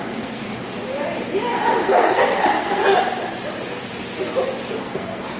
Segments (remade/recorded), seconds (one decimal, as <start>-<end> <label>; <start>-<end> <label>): 0.0-0.4 remade; 0.4-1.4 recorded; 1.4-2.8 remade; 2.8-4.8 recorded; 4.8-5.4 remade

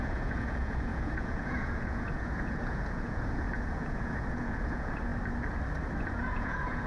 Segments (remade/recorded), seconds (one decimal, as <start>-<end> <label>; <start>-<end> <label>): 0.0-5.1 remade; 5.1-6.0 recorded; 6.0-6.9 remade

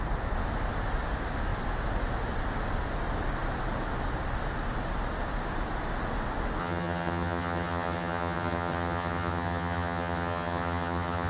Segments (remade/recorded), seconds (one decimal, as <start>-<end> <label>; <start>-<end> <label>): 0.0-6.6 recorded; 6.6-11.3 remade